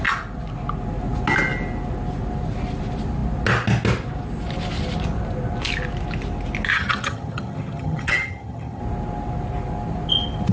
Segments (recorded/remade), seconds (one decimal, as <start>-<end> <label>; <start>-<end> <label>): 0.0-6.7 recorded; 6.7-8.8 remade; 8.8-10.5 recorded

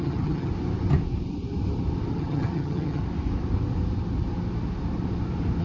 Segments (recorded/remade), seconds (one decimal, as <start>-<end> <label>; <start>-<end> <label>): 0.0-0.5 remade; 0.5-2.1 recorded; 2.1-3.0 remade; 3.0-5.6 recorded